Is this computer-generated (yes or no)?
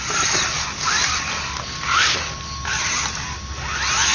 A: no